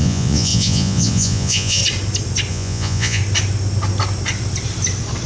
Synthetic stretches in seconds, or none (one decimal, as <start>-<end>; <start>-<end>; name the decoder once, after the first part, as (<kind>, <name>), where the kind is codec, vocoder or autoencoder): 0.0-1.8 (vocoder, Vocos); 2.5-3.2